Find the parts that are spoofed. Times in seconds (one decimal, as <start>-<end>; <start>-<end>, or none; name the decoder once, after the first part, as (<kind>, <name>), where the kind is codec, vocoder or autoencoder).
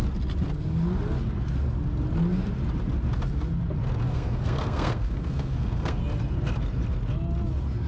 4.1-6.0 (codec, SNAC)